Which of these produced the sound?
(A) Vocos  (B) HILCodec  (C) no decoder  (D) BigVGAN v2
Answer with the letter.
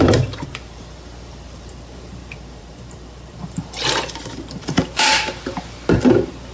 D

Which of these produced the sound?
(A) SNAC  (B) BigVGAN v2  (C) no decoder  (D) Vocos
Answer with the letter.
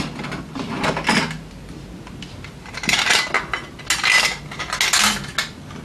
C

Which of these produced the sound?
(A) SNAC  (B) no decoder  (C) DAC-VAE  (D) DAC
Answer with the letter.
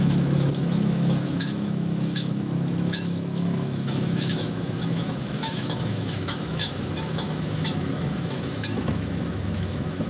C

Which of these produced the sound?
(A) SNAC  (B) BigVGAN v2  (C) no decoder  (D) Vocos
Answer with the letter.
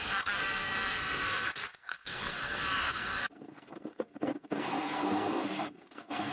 A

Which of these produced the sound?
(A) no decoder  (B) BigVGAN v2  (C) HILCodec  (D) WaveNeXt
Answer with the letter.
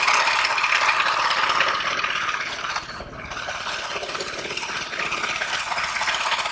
A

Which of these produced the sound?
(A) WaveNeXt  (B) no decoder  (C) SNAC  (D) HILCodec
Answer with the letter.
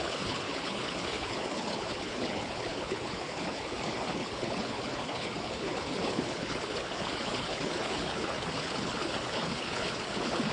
D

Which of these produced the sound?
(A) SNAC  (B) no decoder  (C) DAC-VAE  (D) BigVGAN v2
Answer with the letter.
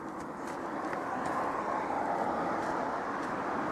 D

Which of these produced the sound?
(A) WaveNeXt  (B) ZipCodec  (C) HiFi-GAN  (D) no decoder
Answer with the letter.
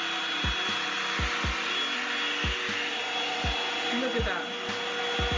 D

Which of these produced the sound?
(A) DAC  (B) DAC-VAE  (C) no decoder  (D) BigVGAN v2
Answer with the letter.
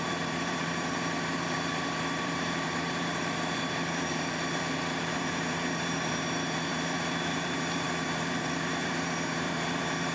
D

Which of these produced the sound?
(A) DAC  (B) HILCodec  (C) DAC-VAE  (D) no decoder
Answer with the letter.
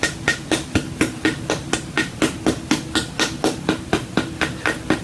D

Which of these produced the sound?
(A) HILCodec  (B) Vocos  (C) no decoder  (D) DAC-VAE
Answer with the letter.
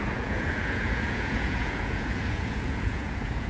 B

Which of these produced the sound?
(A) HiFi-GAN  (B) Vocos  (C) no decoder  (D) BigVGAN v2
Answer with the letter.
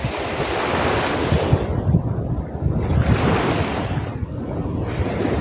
C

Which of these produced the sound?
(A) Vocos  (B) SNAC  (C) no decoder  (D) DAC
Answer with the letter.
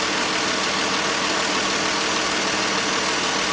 C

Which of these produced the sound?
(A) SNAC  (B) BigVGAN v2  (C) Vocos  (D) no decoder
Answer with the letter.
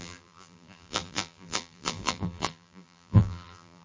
B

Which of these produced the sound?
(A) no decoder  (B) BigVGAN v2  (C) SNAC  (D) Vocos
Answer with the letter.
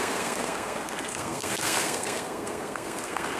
C